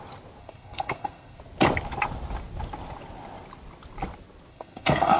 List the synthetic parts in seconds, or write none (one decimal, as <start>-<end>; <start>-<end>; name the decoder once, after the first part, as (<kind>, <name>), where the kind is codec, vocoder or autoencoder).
0.4-1.4 (codec, SNAC); 4.5-5.2